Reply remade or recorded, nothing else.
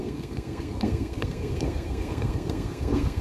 remade